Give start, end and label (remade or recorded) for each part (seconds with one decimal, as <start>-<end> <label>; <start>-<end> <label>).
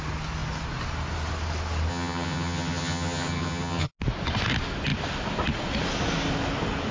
0.0-1.9 recorded; 1.9-3.9 remade; 3.9-6.9 recorded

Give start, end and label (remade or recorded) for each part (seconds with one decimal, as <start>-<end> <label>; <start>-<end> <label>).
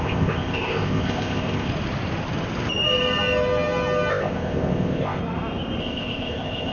0.0-1.7 remade; 1.7-4.1 recorded; 4.1-5.2 remade; 5.2-5.8 recorded; 5.8-6.7 remade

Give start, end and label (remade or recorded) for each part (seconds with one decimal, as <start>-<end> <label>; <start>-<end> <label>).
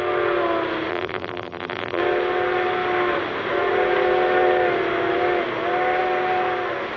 0.0-0.9 recorded; 0.9-2.0 remade; 2.0-7.0 recorded